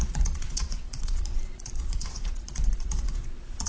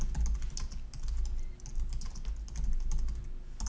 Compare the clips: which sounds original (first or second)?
second